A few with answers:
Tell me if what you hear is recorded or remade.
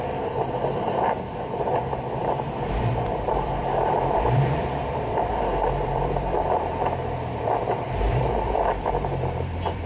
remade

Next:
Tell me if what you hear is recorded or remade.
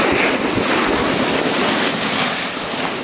recorded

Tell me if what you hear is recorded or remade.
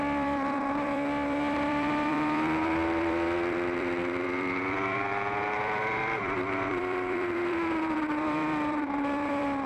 remade